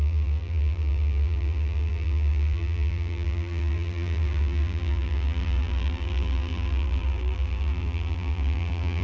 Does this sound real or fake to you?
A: fake